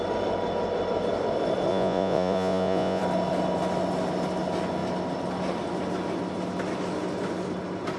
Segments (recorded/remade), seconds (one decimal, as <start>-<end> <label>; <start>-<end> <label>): 0.0-1.7 recorded; 1.7-3.0 remade; 3.0-8.0 recorded